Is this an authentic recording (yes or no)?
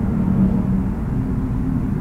yes